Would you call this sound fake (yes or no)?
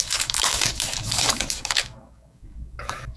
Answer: yes